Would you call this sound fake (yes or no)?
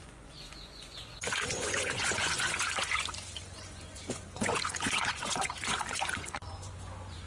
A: yes